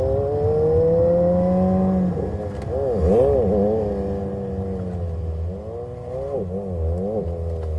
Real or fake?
real